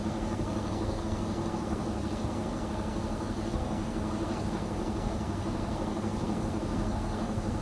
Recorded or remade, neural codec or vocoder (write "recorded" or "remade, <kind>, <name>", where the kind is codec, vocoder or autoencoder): remade, codec, SNAC